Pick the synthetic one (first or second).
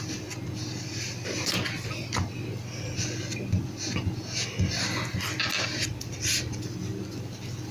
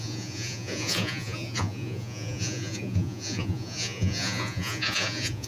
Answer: second